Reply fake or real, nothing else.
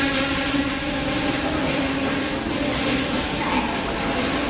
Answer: real